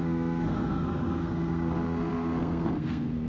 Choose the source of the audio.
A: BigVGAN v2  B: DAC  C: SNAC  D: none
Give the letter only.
C